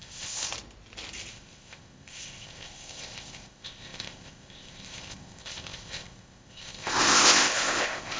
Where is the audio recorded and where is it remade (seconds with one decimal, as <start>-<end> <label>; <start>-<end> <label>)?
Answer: 0.0-0.5 remade; 0.5-1.3 recorded; 1.3-8.2 remade